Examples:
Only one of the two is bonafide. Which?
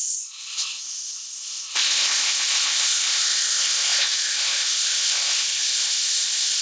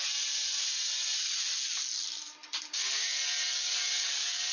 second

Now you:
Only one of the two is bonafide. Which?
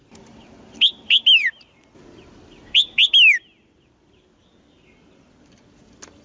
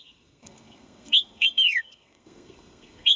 first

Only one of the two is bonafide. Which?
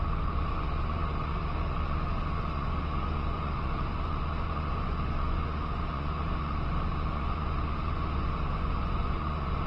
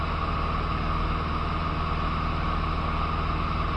second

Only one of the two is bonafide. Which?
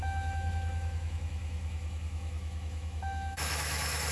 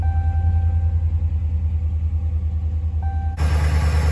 second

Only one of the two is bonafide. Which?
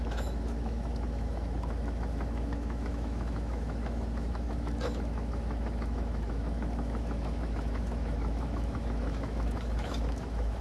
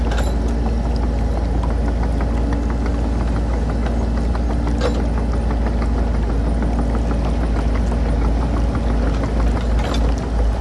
second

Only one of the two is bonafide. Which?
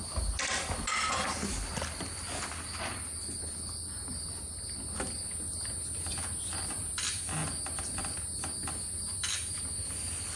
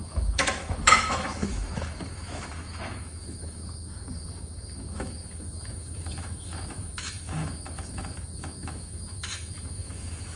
first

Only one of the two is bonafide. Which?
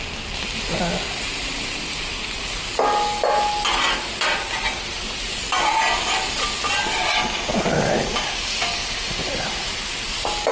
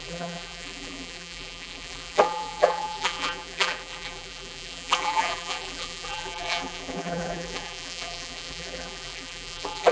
first